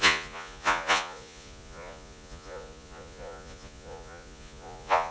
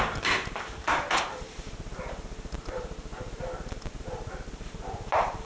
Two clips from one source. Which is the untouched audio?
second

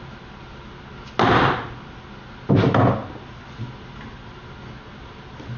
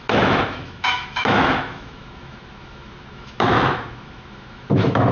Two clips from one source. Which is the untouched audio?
first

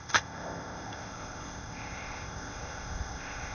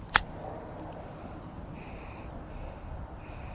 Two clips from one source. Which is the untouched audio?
second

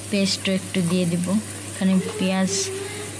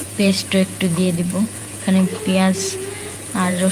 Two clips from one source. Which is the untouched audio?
first